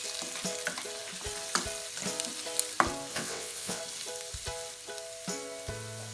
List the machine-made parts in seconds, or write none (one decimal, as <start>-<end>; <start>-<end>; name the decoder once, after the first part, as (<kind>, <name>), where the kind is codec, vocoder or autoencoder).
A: 3.1-3.8 (vocoder, WaveNeXt)